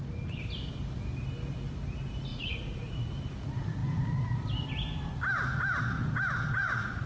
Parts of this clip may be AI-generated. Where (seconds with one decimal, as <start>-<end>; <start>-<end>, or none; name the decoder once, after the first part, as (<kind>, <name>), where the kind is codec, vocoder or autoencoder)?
2.3-3.2 (vocoder, Vocos); 6.6-7.1